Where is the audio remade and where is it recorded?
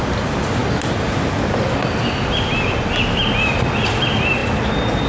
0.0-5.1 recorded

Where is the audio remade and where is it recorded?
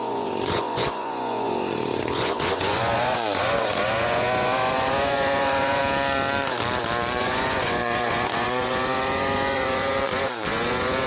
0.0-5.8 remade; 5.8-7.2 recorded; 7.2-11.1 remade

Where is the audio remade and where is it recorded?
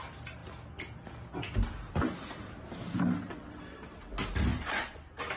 0.0-4.5 recorded; 4.5-5.0 remade; 5.0-5.4 recorded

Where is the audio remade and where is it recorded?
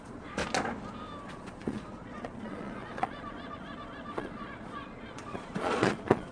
0.0-0.4 remade; 0.4-1.2 recorded; 1.2-6.3 remade